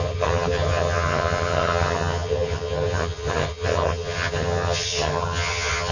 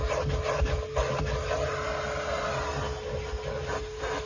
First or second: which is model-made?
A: first